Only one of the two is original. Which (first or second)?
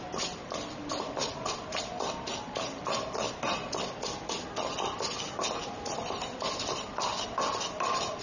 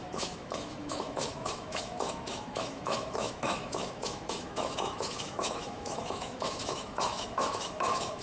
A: first